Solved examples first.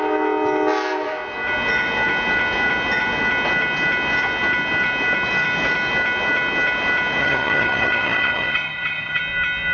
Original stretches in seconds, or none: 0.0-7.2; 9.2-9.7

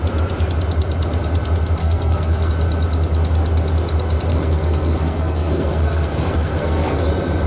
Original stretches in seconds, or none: 0.0-1.8; 2.5-4.3; 7.0-7.5

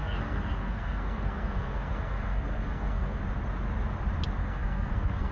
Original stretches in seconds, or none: 3.2-4.4

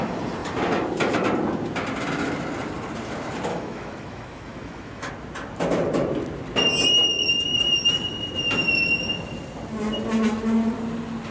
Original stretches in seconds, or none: 0.0-3.5; 5.1-11.3

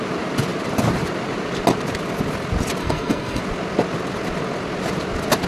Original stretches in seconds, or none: 0.0-2.8; 3.4-5.5

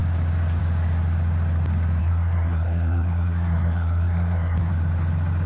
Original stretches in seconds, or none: 0.0-2.0; 4.7-5.5

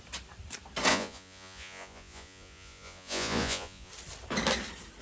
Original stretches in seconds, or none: 0.0-0.9; 3.9-5.0

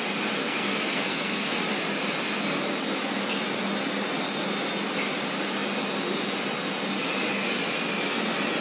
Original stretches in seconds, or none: 0.0-0.4; 1.6-8.6